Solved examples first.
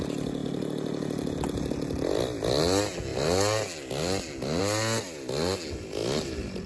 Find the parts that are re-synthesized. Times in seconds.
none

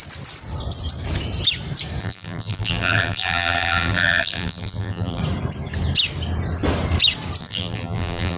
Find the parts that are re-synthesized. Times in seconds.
2.0-5.2; 7.4-8.4

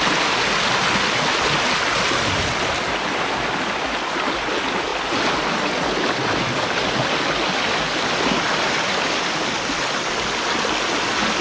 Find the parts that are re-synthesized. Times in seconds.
none